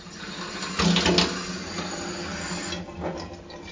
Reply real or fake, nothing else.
real